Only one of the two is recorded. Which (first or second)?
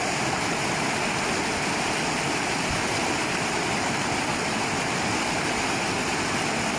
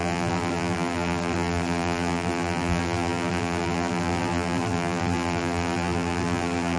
first